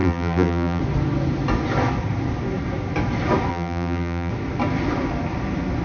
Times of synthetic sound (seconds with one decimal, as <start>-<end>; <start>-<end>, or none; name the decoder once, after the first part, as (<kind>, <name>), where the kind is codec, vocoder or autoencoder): 0.0-0.8 (vocoder, BigVGAN v2); 3.5-4.3